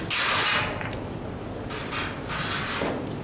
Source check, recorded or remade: recorded